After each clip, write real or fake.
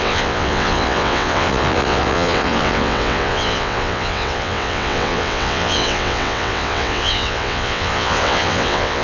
fake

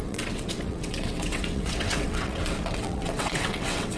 fake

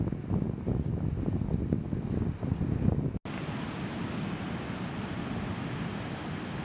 real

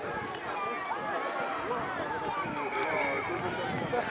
real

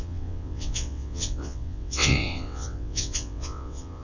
fake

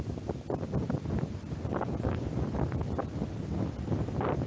real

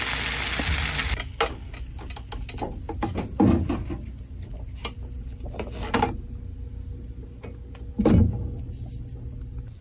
real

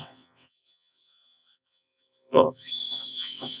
fake